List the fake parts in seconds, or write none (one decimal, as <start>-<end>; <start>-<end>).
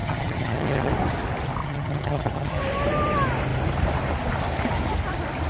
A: 0.0-0.9; 1.6-2.6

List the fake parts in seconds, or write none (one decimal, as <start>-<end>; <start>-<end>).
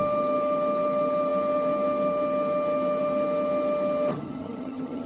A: 4.1-5.1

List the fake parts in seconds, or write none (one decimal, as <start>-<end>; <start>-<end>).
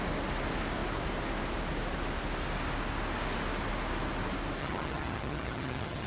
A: 4.6-6.1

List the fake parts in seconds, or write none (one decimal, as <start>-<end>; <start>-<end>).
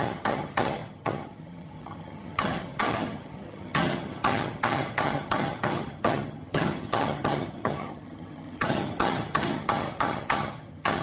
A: 0.0-11.0